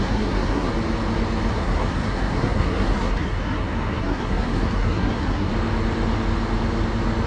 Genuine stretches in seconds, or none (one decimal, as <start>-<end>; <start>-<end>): 0.7-1.5; 5.5-7.3